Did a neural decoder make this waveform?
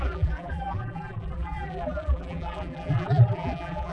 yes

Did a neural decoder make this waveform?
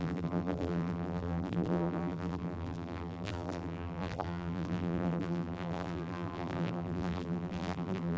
yes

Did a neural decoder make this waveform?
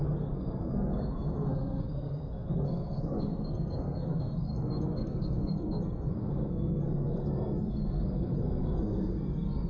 yes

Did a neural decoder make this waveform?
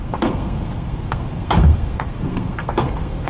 yes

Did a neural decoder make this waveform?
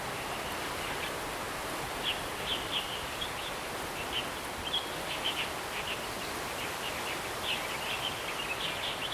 no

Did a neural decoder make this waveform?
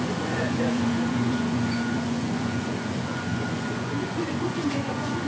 yes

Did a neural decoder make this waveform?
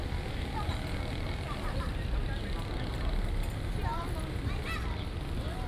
no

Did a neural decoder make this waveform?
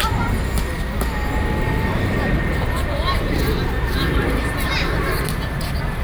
no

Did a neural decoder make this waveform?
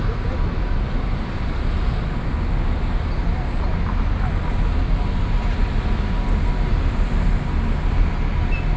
no